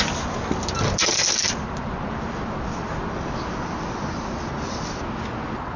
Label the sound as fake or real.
real